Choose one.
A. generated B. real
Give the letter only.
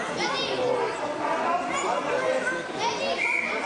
B